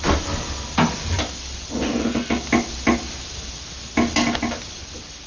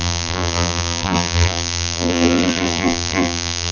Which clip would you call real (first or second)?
first